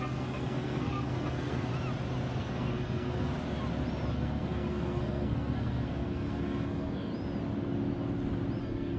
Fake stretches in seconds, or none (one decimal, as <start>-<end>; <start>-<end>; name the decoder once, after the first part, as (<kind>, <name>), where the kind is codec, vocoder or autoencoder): 0.0-1.7 (codec, SNAC); 2.4-3.3; 4.1-7.1; 8.6-9.0